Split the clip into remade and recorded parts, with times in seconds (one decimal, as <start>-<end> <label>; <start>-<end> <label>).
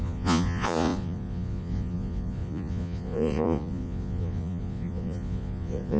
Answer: 0.0-6.0 remade